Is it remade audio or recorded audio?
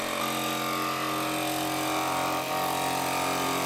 recorded